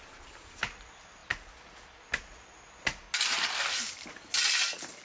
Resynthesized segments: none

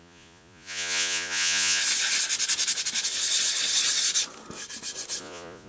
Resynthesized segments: 0.0-1.8 (vocoder, Vocos); 5.2-5.7

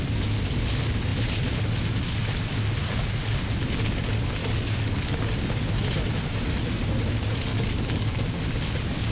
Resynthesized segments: 4.4-5.3 (codec, DAC); 7.5-8.4

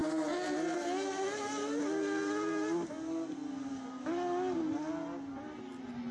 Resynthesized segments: none

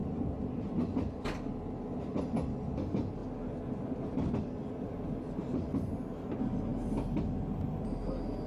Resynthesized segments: 0.0-0.8 (vocoder, BigVGAN v2)